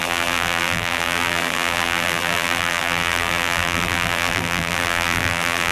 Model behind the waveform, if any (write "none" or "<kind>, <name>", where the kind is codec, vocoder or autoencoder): vocoder, BigVGAN v2